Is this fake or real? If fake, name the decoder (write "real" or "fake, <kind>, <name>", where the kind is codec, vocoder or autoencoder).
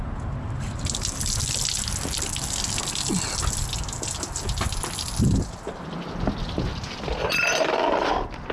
real